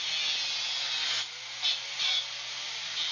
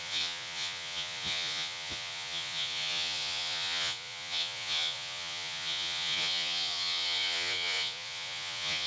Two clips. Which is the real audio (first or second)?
first